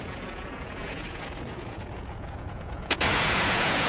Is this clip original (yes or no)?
no